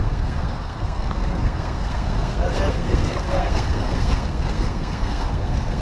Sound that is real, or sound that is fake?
fake